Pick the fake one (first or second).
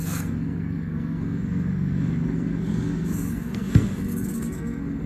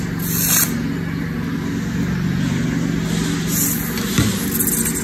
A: first